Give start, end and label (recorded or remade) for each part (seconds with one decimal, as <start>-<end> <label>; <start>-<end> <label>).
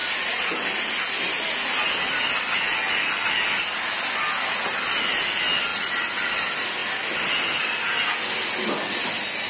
0.0-9.5 recorded